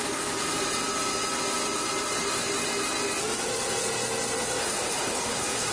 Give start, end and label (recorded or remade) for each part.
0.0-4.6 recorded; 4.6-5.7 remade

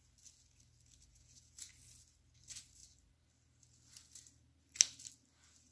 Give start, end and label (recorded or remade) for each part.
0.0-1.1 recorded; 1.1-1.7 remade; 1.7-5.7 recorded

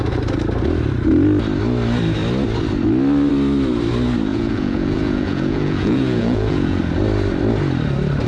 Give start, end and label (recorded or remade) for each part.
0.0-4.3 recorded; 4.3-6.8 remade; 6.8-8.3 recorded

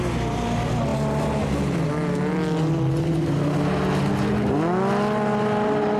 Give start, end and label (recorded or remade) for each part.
0.0-6.0 recorded

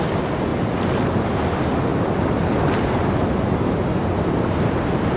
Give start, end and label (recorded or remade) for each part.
0.0-5.2 recorded